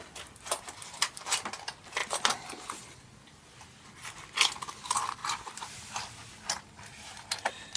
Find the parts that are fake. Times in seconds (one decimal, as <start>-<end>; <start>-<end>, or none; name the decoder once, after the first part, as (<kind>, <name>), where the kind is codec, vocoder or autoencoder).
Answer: none